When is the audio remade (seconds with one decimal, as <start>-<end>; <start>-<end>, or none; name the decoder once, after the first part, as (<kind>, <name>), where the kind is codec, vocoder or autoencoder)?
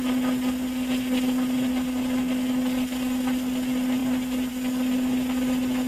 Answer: none